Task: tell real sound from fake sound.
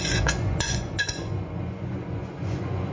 fake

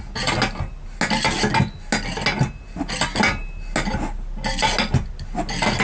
real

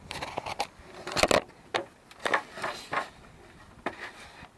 real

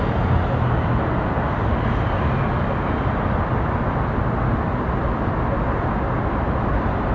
real